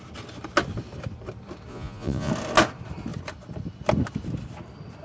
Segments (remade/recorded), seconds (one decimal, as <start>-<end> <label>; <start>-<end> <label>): 0.0-1.7 recorded; 1.7-2.3 remade; 2.3-5.0 recorded